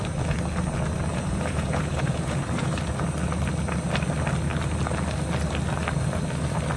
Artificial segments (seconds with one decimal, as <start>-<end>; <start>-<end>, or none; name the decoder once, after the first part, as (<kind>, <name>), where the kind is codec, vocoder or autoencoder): 1.1-2.7 (vocoder, Vocos)